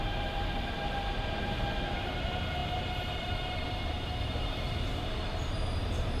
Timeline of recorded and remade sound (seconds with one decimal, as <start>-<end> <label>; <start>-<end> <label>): 0.0-6.2 remade